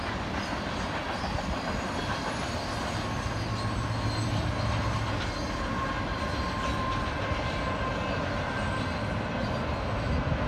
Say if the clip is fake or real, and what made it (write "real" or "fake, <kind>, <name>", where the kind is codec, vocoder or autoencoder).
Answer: real